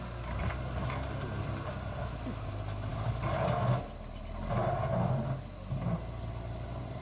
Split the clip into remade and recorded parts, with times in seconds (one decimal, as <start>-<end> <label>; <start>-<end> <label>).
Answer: 0.0-7.0 recorded